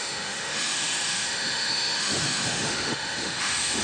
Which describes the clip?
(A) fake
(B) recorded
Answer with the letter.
A